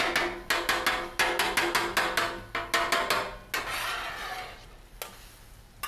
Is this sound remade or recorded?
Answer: recorded